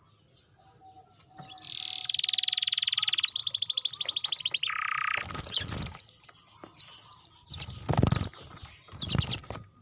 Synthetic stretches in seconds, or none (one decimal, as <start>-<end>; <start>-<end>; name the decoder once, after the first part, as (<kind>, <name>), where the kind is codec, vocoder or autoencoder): none